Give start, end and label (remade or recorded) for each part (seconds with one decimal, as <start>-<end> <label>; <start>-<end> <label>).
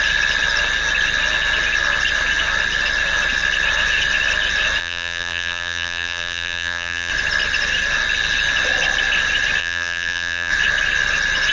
0.0-4.8 recorded; 4.8-7.1 remade; 7.1-9.6 recorded; 9.6-10.5 remade; 10.5-11.5 recorded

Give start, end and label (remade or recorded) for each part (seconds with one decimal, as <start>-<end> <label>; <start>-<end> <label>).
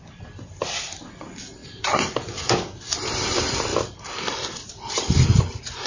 0.0-1.6 recorded; 1.6-2.5 remade; 2.5-3.7 recorded; 3.7-5.4 remade; 5.4-5.9 recorded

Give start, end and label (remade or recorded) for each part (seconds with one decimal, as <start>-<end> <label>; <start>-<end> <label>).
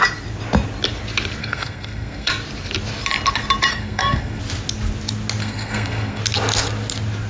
0.0-1.4 recorded; 1.4-2.3 remade; 2.3-3.7 recorded; 3.7-4.4 remade; 4.4-5.4 recorded; 5.4-6.2 remade; 6.2-7.3 recorded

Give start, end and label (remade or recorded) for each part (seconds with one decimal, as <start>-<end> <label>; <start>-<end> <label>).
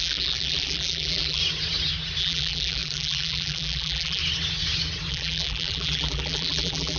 0.0-1.4 remade; 1.4-2.2 recorded; 2.2-4.2 remade; 4.2-5.1 recorded; 5.1-7.0 remade